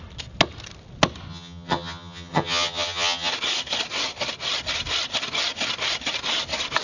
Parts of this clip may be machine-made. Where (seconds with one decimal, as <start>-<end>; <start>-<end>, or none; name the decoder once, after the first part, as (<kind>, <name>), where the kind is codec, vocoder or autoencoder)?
1.3-3.3 (vocoder, HiFi-GAN)

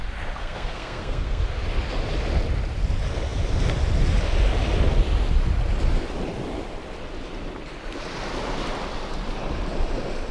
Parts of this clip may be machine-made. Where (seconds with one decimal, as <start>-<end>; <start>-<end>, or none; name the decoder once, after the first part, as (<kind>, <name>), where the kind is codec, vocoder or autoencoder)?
0.4-1.4 (codec, SNAC)

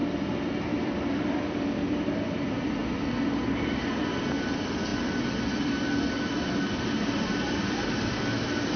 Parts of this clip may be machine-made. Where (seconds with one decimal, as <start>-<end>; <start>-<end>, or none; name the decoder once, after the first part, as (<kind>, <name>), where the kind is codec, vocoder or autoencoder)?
0.7-2.8 (vocoder, BigVGAN v2); 3.9-8.8